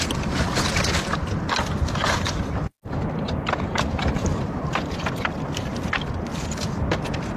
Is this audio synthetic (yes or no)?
no